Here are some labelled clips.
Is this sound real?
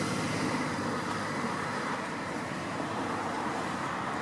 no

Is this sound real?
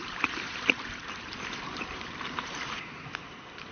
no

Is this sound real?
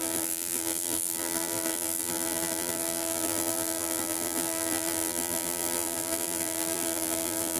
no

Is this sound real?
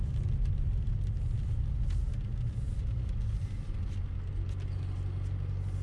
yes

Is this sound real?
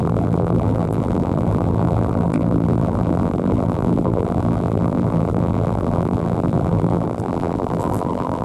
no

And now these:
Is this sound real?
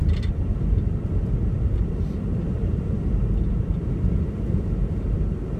no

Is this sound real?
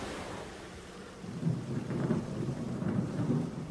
no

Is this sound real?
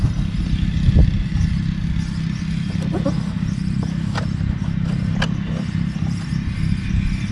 yes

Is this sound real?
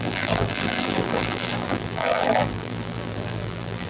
no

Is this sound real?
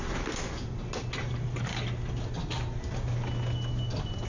yes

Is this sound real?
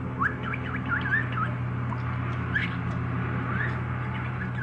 yes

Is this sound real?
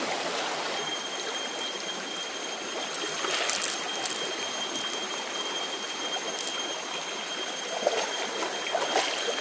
yes